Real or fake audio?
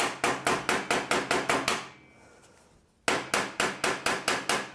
real